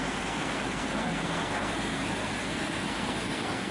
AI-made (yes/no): yes